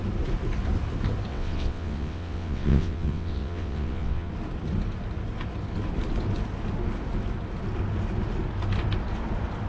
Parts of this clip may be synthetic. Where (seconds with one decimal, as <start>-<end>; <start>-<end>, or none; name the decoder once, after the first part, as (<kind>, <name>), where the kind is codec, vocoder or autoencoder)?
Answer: 1.3-4.3 (vocoder, WaveNeXt)